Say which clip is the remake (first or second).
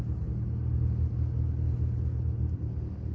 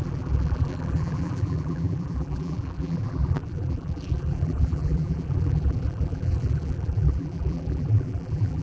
second